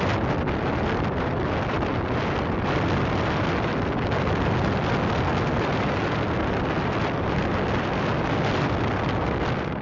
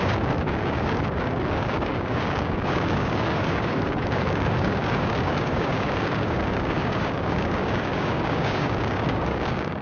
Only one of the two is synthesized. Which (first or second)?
second